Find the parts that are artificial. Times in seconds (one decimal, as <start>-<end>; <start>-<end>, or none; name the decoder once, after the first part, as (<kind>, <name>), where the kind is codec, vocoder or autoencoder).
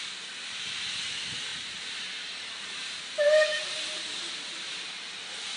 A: 1.5-4.9 (vocoder, BigVGAN v2)